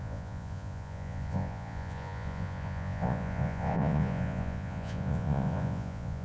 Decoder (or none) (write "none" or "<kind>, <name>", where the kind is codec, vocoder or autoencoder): vocoder, Vocos